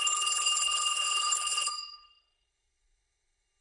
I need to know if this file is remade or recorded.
remade